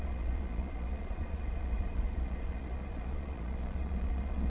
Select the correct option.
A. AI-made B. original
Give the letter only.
A